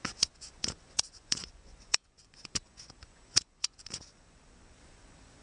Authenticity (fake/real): fake